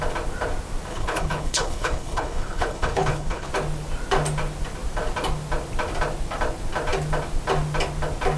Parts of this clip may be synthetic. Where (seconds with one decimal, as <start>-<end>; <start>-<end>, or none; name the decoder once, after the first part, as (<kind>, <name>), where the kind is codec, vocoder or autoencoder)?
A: 0.9-3.5 (codec, HILCodec)